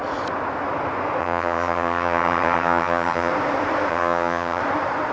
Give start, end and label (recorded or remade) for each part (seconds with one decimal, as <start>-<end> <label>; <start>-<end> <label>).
0.0-1.2 recorded; 1.2-3.3 remade; 3.3-3.9 recorded; 3.9-4.6 remade; 4.6-5.1 recorded